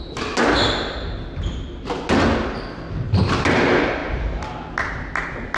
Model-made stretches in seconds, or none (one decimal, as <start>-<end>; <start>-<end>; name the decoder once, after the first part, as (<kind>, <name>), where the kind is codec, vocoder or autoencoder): none